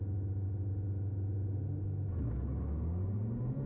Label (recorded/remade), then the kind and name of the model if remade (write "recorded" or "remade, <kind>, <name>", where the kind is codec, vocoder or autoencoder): recorded